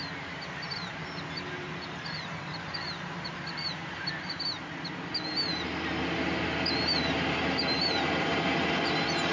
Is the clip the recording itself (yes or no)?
yes